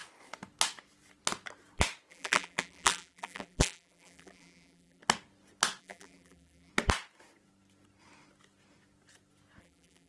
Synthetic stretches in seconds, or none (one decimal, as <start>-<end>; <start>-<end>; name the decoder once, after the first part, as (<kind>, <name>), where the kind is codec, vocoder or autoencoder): 2.1-5.0 (vocoder, BigVGAN v2); 5.8-6.7; 9.6-10.1